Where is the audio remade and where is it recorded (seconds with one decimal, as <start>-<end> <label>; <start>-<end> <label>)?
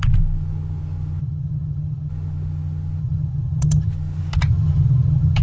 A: 0.0-1.2 recorded; 1.2-2.1 remade; 2.1-3.0 recorded; 3.0-3.9 remade; 3.9-4.5 recorded; 4.5-5.4 remade